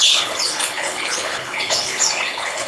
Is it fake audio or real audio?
fake